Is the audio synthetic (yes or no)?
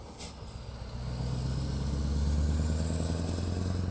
no